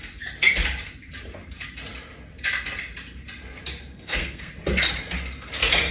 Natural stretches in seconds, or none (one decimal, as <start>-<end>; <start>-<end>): 0.0-3.9; 4.5-5.9